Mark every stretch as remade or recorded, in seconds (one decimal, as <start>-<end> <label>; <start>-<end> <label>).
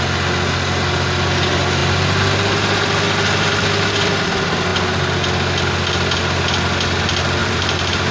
0.0-7.4 recorded; 7.4-8.1 remade